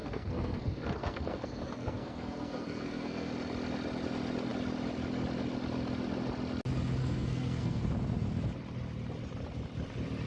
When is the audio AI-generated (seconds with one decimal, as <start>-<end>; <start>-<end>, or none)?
0.0-3.3; 7.0-7.8